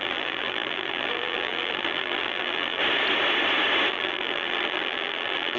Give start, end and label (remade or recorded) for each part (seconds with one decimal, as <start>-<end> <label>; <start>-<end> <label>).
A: 0.0-2.8 remade; 2.8-3.9 recorded; 3.9-5.6 remade

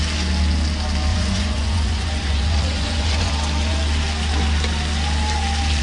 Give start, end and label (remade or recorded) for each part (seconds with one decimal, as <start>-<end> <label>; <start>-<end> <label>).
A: 0.0-1.1 recorded; 1.1-3.3 remade; 3.3-5.8 recorded

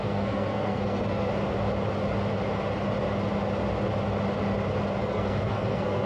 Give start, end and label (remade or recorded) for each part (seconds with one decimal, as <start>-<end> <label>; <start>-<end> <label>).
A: 0.0-1.3 remade; 1.3-5.0 recorded; 5.0-6.1 remade